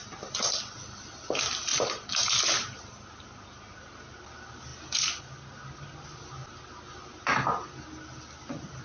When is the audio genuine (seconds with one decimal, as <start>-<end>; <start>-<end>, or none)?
0.0-8.8